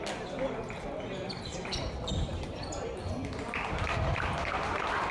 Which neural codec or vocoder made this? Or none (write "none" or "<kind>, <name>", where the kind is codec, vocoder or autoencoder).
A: vocoder, BigVGAN v2